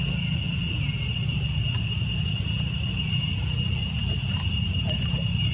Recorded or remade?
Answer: recorded